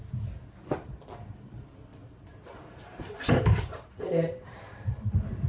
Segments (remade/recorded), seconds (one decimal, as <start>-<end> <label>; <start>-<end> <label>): 0.0-1.9 recorded; 1.9-5.5 remade